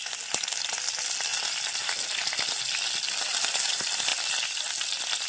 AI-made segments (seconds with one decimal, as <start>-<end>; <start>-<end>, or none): none